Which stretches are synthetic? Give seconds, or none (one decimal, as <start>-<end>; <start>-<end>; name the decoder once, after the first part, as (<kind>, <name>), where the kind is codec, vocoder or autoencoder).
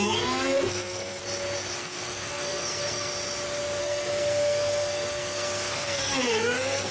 0.0-1.2 (codec, SNAC); 1.8-3.1; 3.8-6.9